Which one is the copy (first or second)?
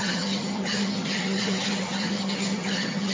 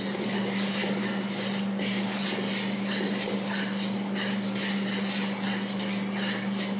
first